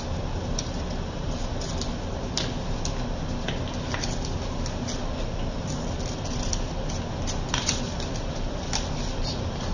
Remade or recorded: recorded